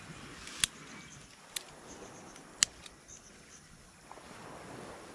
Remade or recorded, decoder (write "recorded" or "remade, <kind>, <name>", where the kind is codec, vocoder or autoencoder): recorded